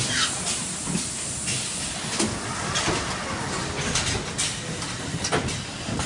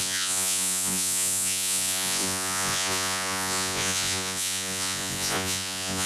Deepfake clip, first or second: second